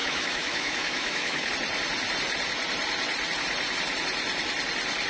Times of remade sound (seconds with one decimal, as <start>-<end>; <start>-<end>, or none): 0.0-1.5